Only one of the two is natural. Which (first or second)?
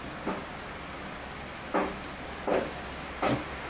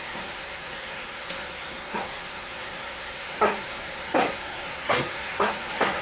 first